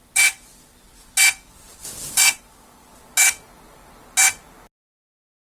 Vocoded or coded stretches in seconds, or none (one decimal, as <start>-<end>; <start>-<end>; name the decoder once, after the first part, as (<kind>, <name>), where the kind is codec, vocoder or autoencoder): none